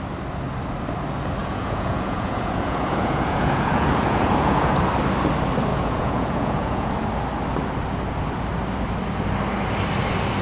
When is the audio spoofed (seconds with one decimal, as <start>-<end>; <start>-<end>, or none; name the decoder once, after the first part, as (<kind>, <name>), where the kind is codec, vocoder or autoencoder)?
1.4-4.7 (vocoder, Vocos); 5.7-6.9